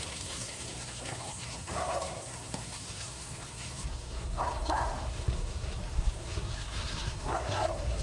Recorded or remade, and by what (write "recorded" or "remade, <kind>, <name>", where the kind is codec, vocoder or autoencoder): remade, codec, SNAC